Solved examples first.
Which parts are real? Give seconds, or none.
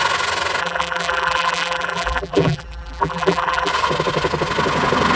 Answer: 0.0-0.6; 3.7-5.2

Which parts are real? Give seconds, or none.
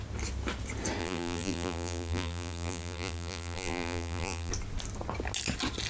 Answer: 0.0-1.0; 4.5-5.9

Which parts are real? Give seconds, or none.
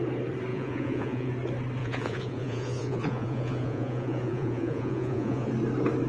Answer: 0.0-0.5; 1.3-1.8; 5.5-6.1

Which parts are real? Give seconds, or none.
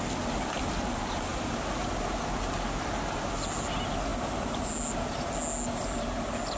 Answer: 0.0-6.6